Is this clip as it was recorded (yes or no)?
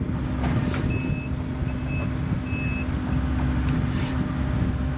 yes